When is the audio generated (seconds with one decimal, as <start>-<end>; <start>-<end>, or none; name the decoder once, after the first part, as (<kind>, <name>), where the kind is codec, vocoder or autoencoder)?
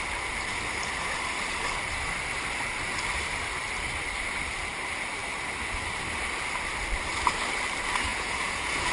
8.1-8.9 (vocoder, Vocos)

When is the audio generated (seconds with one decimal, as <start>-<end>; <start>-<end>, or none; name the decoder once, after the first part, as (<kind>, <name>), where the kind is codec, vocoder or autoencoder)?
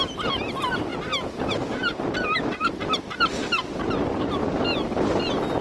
none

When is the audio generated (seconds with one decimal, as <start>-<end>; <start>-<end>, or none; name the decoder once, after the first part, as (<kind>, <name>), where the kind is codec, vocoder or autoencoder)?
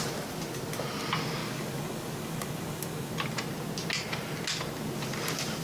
1.4-3.1 (codec, DAC)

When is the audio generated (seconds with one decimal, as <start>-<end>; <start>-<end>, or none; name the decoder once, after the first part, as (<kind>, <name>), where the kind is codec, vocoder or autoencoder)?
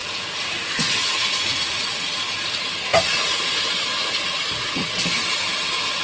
0.0-2.3 (vocoder, Vocos); 2.9-3.4; 4.0-4.9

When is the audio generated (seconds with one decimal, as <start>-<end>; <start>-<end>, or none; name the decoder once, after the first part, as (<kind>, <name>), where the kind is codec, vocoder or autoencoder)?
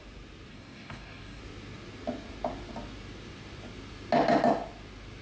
0.5-1.4 (codec, DAC)